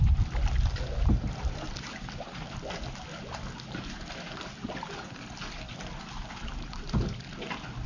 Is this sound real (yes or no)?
yes